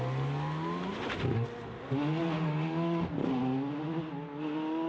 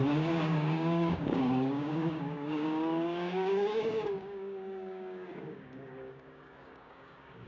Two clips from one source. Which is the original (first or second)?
first